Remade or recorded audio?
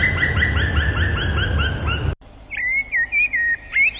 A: recorded